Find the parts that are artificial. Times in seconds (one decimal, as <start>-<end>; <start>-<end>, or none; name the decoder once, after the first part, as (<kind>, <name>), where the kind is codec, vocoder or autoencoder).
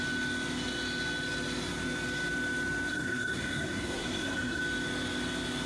2.9-4.6 (codec, SNAC)